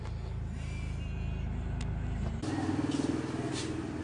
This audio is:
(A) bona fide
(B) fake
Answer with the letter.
A